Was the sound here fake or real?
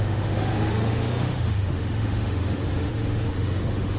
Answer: fake